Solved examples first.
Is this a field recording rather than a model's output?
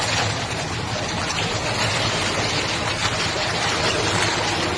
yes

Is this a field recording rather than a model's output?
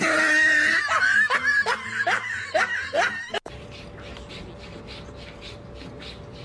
yes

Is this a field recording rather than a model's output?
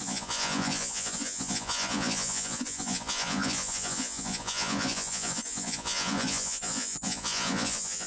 no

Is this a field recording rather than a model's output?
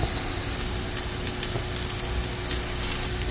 yes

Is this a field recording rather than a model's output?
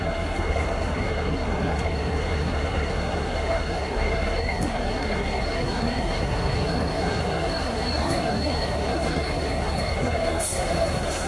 no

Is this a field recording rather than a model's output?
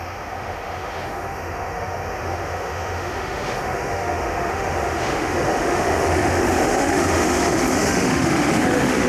no